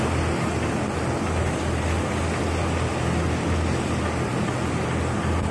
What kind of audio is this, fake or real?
real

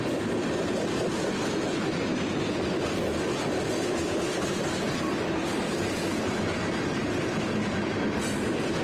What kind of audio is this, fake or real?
real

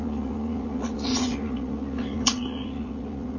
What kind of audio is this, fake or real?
fake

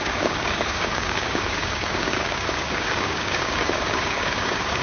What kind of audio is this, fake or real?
fake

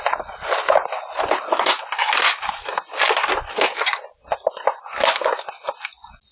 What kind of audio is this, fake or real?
real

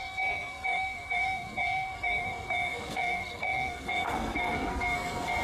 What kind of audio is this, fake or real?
fake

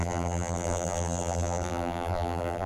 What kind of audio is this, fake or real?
fake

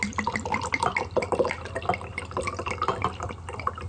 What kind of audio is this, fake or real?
real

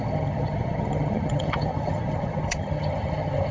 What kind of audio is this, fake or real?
fake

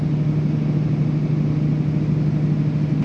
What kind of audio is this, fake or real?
real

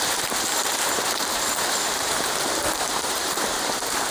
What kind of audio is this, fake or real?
fake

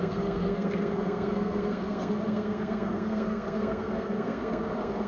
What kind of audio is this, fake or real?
fake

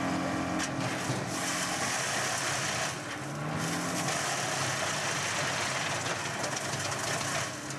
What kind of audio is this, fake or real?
real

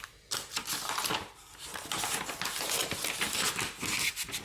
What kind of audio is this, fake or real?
real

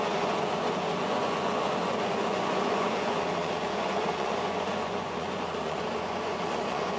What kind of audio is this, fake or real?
fake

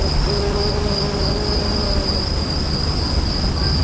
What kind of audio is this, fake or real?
real